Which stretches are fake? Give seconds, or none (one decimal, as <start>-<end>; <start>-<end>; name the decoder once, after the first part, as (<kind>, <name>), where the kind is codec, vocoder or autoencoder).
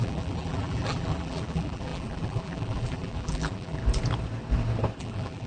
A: 0.0-3.8 (vocoder, BigVGAN v2); 5.0-5.5